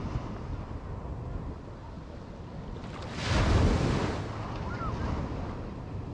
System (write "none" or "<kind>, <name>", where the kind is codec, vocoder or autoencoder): none